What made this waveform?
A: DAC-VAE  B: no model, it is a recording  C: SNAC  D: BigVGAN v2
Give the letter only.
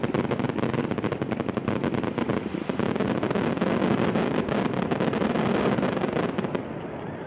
B